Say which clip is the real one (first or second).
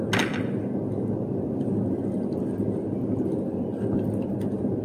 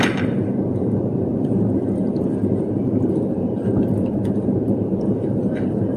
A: first